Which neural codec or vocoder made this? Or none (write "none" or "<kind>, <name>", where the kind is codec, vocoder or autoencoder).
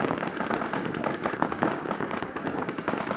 codec, DAC